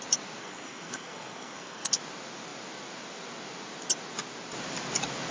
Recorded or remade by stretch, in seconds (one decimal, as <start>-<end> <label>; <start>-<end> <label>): 0.0-0.4 recorded; 0.4-2.0 remade; 2.0-5.3 recorded